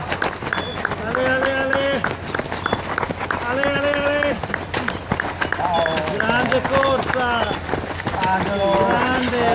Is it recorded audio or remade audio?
recorded